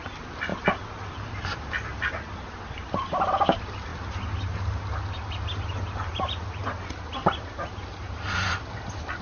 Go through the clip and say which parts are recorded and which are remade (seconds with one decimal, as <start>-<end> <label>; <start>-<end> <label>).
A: 0.0-9.2 recorded